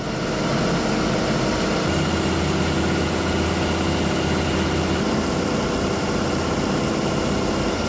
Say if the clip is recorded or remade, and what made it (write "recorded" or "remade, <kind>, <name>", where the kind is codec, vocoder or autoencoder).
recorded